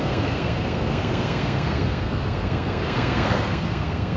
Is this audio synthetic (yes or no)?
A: yes